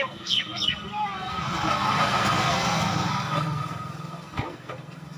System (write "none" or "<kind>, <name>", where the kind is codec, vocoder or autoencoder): codec, SNAC